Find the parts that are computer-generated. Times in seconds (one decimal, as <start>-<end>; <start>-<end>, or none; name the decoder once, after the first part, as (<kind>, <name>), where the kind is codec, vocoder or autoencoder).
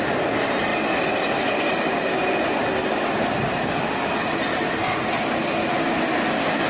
none